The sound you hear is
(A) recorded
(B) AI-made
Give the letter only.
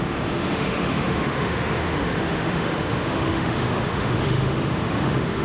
B